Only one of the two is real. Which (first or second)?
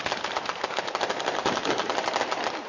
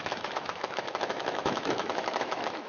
first